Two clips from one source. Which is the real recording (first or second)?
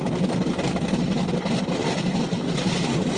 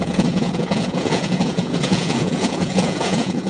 first